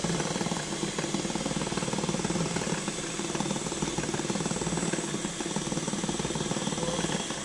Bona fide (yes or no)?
yes